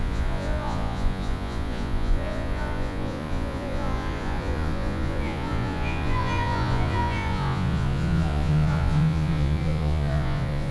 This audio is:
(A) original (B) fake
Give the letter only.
B